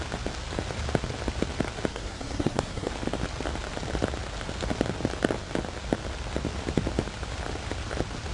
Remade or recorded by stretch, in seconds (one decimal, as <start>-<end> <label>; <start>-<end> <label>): 0.0-1.9 recorded; 1.9-2.9 remade; 2.9-8.3 recorded